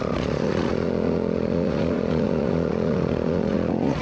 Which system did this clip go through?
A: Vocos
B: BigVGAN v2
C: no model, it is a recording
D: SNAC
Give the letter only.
A